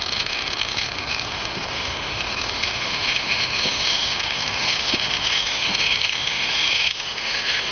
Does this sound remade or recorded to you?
remade